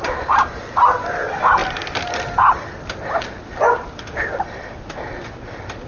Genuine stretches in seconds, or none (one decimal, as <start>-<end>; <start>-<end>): 0.0-5.9